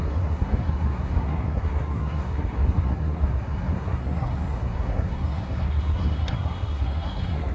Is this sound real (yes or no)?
no